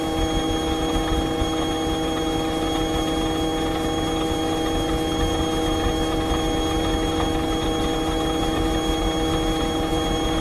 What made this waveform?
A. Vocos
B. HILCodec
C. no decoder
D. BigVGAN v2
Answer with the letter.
C